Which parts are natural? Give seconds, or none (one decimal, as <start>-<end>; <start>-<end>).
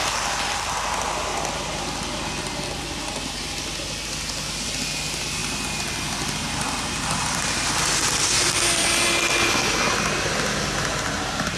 0.0-11.6